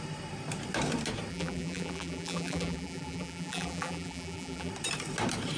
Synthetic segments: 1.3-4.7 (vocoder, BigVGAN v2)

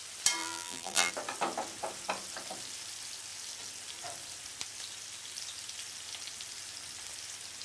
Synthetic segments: 0.4-1.1 (vocoder, BigVGAN v2)

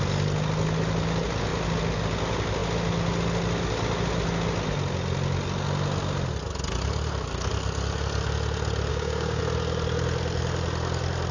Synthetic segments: 8.9-9.4 (codec, DAC)

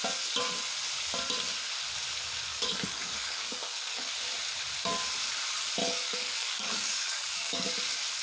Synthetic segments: 2.5-4.1 (codec, DAC); 5.8-7.7

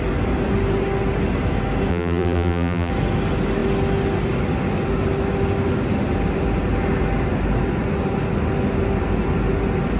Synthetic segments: 1.9-2.9 (vocoder, BigVGAN v2)

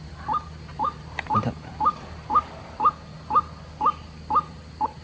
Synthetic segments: 0.7-2.4 (vocoder, BigVGAN v2)

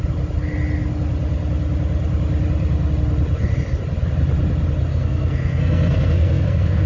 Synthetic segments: 4.9-6.9 (codec, SNAC)